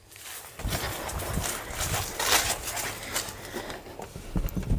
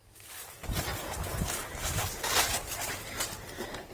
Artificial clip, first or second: second